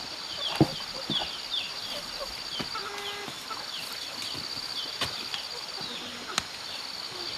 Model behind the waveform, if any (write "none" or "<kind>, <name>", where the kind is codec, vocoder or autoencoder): none